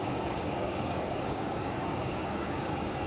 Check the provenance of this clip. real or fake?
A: fake